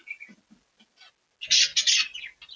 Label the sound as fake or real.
real